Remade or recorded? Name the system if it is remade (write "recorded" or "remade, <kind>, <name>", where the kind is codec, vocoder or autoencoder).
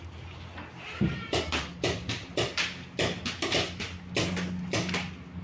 recorded